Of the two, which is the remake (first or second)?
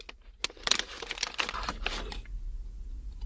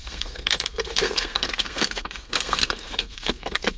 second